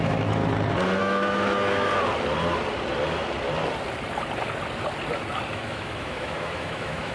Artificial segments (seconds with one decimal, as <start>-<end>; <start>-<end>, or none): 0.0-0.4; 1.0-1.9; 5.5-7.1